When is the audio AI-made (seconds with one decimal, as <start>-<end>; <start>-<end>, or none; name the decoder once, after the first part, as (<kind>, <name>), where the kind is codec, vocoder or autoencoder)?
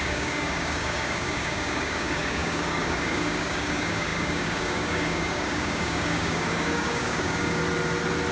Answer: 0.0-7.6 (codec, DAC)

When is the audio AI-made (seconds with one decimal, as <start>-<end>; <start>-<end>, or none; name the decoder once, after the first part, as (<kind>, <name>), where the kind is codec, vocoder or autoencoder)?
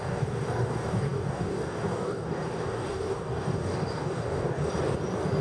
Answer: 0.0-4.7 (codec, DAC)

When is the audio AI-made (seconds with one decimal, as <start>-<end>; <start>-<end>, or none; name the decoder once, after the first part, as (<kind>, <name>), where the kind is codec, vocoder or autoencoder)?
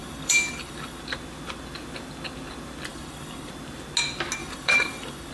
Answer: 0.0-1.0 (codec, DAC); 2.9-3.5; 4.4-5.3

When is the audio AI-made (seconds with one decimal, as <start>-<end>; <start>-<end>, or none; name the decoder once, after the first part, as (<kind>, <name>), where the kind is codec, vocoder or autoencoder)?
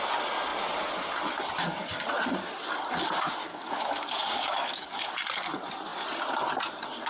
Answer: 3.5-5.1 (codec, DAC)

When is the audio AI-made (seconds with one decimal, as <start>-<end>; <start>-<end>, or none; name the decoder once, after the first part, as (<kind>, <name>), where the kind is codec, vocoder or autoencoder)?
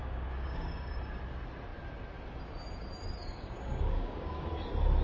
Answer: 0.0-0.9 (codec, DAC); 3.2-4.5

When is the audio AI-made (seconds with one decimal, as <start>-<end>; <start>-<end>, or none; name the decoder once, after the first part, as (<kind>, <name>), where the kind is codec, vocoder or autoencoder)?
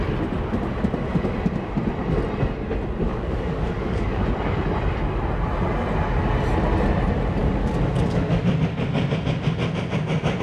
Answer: 3.1-4.2 (codec, DAC); 7.4-8.4